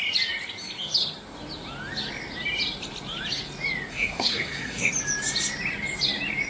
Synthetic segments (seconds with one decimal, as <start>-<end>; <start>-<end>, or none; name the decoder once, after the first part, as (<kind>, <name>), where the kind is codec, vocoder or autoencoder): 3.9-4.9 (codec, SNAC)